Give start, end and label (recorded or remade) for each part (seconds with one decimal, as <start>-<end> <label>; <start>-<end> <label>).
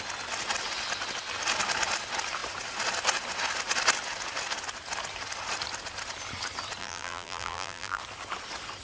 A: 0.0-6.8 recorded; 6.8-8.0 remade; 8.0-8.8 recorded